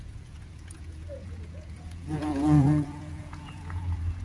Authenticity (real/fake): fake